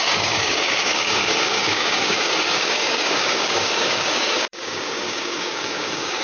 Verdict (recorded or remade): remade